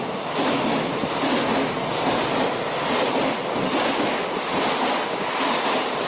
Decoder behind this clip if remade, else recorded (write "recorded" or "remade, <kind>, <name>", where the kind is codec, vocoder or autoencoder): recorded